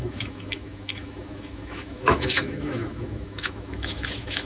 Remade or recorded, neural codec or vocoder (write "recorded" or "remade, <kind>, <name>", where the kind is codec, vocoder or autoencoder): remade, autoencoder, DAC-VAE